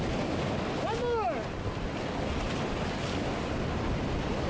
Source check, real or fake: real